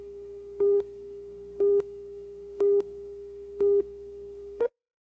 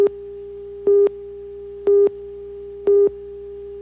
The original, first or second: second